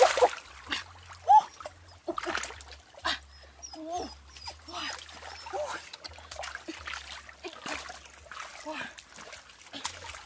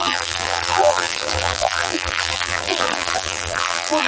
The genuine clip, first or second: first